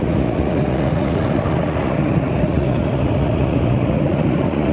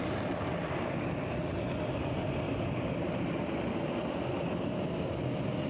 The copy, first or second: first